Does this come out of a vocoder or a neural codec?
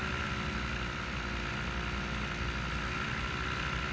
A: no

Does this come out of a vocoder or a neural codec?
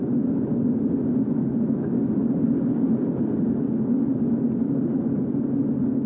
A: no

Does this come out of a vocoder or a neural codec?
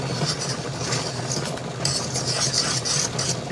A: no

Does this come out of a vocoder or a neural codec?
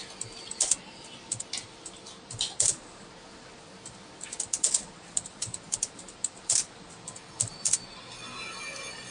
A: no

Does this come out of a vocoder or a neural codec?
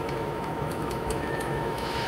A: yes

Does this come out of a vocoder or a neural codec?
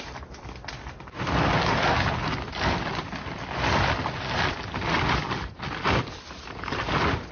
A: no